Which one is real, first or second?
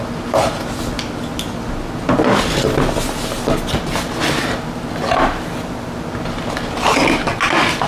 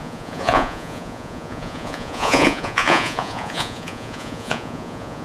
first